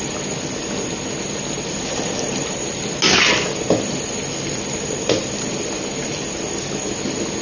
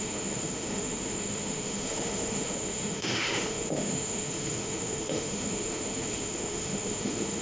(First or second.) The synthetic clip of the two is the second